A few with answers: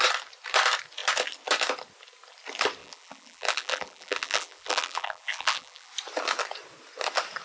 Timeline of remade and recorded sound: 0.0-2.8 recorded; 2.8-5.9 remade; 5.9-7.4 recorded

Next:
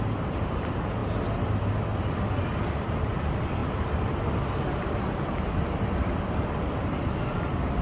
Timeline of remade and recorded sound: 0.0-1.0 remade; 1.0-2.1 recorded; 2.1-7.8 remade

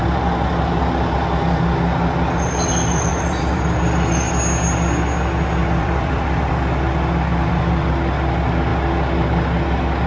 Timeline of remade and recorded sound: 0.0-3.1 recorded; 3.1-4.3 remade; 4.3-5.6 recorded; 5.6-6.5 remade; 6.5-7.3 recorded; 7.3-7.9 remade; 7.9-10.1 recorded

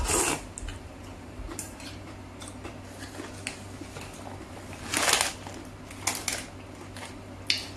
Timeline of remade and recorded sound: 0.0-0.7 recorded; 0.7-2.7 remade; 2.7-7.8 recorded